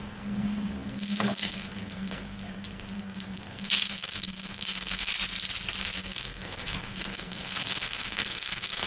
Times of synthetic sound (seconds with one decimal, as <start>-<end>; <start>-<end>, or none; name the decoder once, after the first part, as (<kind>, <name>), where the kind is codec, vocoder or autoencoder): 0.0-5.1 (codec, SNAC); 5.8-8.9